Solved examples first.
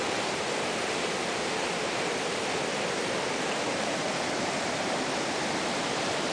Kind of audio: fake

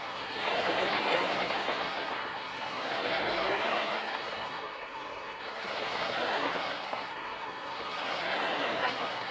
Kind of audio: fake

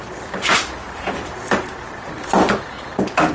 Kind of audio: real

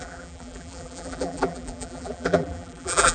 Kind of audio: fake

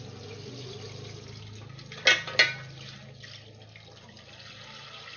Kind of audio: real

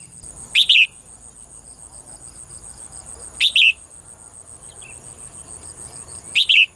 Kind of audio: real